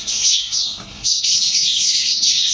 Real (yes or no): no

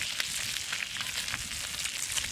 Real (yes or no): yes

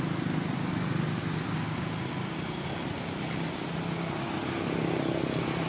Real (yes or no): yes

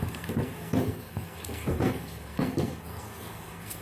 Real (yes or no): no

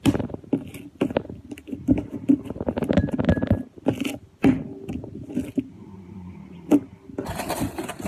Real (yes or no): yes